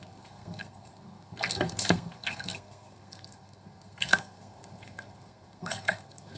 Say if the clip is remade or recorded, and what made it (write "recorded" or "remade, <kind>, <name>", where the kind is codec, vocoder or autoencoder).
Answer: remade, codec, SNAC